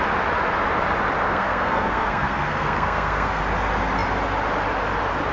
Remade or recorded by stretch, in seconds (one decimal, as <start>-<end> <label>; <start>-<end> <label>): 0.0-1.2 recorded; 1.2-3.4 remade; 3.4-5.3 recorded